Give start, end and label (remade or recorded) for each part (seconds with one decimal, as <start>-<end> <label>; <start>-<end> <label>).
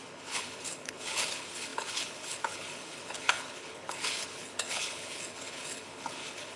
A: 0.0-6.6 remade